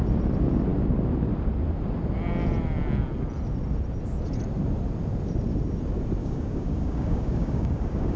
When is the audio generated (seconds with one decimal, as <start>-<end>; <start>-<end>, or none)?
6.2-8.2